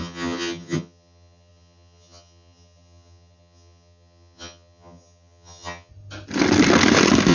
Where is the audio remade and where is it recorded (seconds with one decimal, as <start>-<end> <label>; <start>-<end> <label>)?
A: 0.0-5.9 remade; 5.9-7.3 recorded